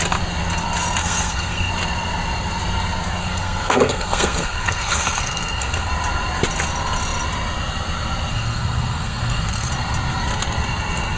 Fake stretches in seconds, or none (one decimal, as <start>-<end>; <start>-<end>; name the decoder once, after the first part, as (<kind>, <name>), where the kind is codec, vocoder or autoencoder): 1.0-1.7 (codec, SNAC); 3.2-5.9; 8.3-9.7